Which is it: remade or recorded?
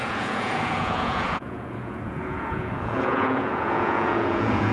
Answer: remade